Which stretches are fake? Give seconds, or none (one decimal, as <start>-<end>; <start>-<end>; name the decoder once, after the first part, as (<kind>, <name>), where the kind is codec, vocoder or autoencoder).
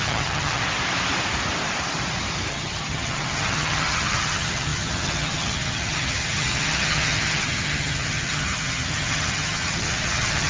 0.0-0.6 (vocoder, HiFi-GAN); 2.5-10.5